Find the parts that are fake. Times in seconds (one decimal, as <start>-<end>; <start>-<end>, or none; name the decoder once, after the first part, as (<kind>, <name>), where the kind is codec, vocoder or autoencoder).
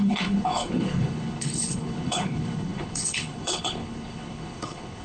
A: 0.0-5.0 (codec, HILCodec)